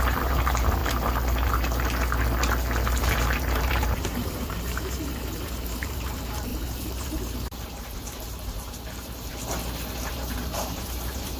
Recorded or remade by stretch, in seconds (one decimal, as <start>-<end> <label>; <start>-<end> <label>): 0.0-0.8 remade; 0.8-3.0 recorded; 3.0-9.3 remade; 9.3-10.1 recorded; 10.1-11.4 remade